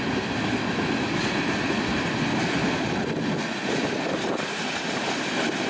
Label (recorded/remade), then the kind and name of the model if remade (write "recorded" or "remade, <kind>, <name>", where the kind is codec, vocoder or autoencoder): recorded